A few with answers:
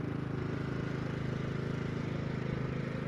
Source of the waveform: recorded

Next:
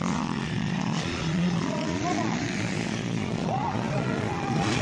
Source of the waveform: remade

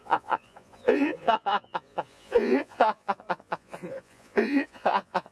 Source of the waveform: remade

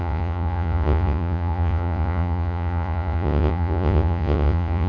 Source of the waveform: remade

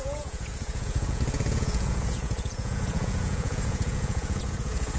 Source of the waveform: remade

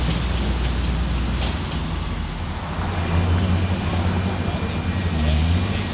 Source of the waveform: recorded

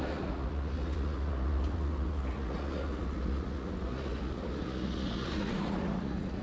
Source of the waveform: remade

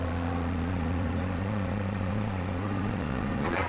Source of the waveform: remade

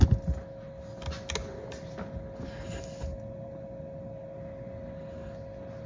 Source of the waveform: recorded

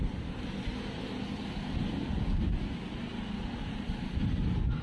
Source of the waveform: recorded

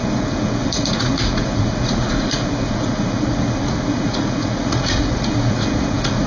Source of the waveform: remade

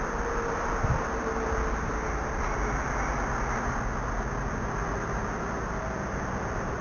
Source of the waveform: recorded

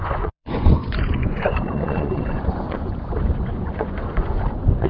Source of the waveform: remade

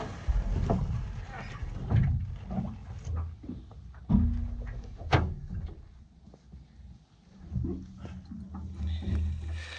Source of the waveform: recorded